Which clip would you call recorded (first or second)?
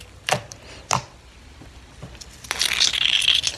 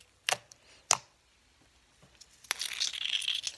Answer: second